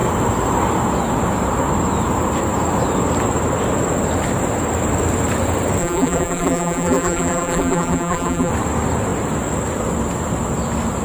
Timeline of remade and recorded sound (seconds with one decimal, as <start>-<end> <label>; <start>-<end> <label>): 0.0-5.8 recorded; 5.8-8.5 remade; 8.5-11.0 recorded